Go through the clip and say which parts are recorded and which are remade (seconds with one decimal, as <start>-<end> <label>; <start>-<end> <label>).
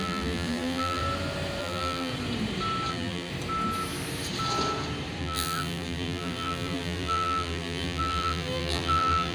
0.0-1.0 remade; 1.0-1.6 recorded; 1.6-2.1 remade; 2.1-2.9 recorded; 2.9-3.3 remade; 3.3-5.2 recorded; 5.2-9.3 remade